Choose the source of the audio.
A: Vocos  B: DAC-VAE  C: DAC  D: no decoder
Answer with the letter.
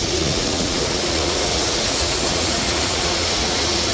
A